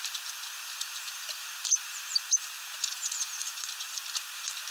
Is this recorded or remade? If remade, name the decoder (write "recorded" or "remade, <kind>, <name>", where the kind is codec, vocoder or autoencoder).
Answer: remade, vocoder, BigVGAN v2